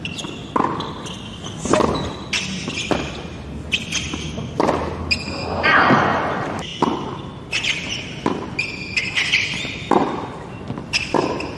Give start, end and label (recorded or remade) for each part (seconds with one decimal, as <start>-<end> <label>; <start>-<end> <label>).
0.0-11.6 recorded